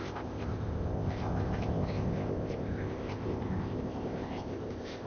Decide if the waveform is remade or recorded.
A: remade